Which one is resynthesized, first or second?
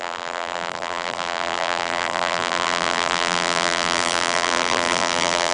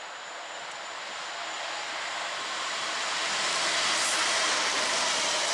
first